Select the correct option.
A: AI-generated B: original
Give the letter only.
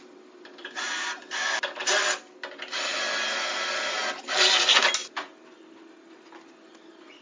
B